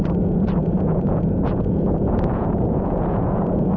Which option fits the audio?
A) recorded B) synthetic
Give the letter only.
B